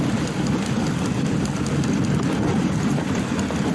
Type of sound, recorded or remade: recorded